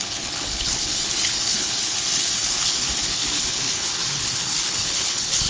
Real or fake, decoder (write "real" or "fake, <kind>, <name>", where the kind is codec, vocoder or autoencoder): fake, codec, HILCodec